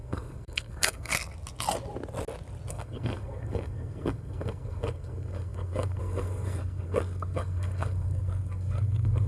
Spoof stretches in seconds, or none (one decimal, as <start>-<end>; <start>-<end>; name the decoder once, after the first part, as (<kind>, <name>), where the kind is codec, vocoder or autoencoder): 0.0-1.1 (codec, SNAC); 2.7-9.3